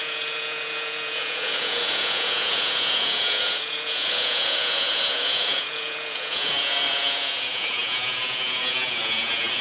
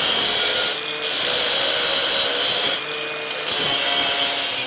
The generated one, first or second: first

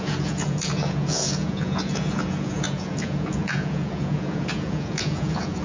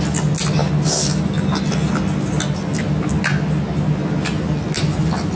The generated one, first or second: first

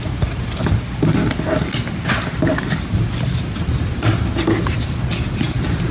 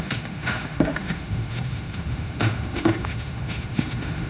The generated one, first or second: second